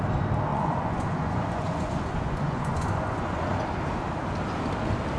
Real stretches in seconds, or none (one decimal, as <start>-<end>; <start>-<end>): 0.0-0.5; 3.6-5.2